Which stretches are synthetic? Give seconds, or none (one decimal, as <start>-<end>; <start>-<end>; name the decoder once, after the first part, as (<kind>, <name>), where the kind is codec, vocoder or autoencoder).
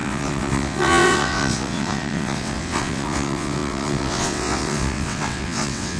0.0-6.0 (vocoder, WaveNeXt)